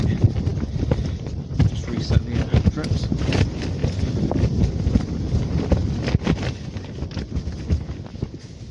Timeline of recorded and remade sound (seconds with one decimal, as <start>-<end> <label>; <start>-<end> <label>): 0.0-8.7 recorded